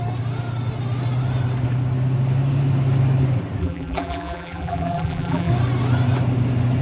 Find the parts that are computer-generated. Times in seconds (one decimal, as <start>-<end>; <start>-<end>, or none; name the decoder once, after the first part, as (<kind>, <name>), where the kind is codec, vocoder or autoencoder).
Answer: 3.6-5.5 (vocoder, BigVGAN v2)